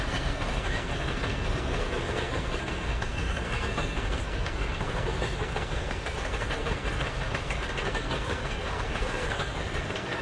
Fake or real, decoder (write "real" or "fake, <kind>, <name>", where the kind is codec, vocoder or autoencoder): fake, codec, SNAC